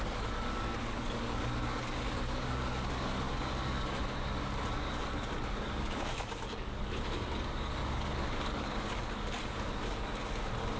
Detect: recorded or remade remade